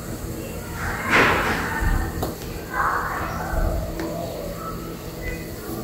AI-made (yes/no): no